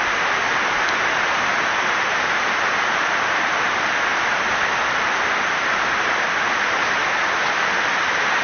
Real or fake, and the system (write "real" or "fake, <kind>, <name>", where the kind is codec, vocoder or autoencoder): real